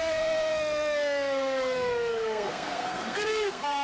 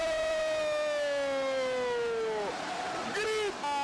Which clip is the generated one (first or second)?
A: first